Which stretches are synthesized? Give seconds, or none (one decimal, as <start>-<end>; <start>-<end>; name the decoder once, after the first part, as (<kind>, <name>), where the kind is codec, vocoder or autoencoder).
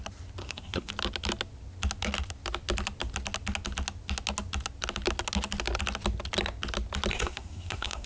0.4-0.9 (codec, SNAC); 7.1-8.1